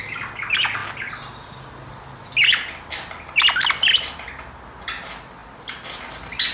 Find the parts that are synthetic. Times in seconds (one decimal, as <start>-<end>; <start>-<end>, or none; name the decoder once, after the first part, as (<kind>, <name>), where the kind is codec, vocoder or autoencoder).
none